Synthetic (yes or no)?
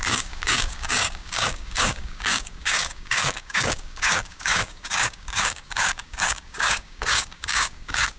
yes